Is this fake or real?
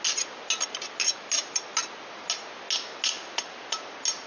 real